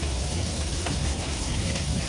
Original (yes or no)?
no